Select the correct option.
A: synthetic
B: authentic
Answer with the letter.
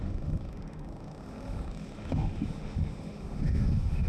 A